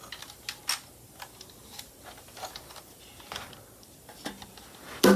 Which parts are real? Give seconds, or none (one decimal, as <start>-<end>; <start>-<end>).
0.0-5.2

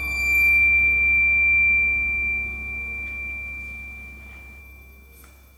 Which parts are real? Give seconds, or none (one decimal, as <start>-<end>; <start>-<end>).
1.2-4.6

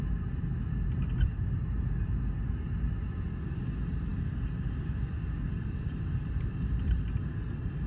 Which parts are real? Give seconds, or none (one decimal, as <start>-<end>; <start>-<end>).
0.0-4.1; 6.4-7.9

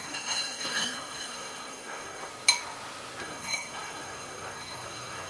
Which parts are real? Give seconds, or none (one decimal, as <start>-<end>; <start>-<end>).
2.3-3.2

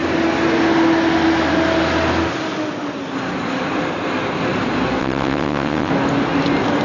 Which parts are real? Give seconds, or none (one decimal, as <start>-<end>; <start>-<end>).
0.0-5.0; 5.9-6.8

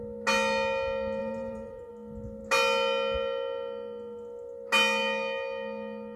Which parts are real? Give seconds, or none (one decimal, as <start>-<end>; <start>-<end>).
0.0-1.2; 1.9-6.2

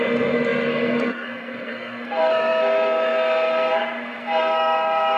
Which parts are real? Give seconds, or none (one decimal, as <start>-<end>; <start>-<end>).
none

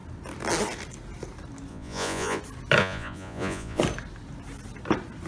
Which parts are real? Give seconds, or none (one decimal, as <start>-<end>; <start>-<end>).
0.0-1.7; 2.4-2.8; 3.8-5.3